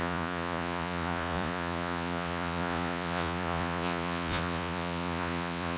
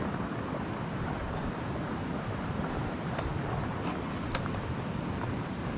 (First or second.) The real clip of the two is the second